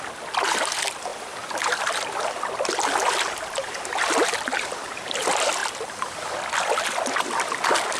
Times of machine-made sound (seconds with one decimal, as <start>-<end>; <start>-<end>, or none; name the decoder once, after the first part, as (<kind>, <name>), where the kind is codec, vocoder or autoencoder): none